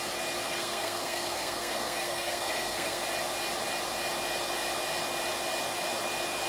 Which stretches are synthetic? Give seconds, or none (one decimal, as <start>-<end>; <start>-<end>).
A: 0.4-3.0